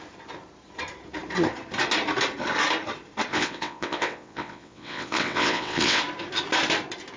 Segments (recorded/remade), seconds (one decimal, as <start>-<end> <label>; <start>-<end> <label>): 0.0-3.3 recorded; 3.3-6.0 remade; 6.0-7.2 recorded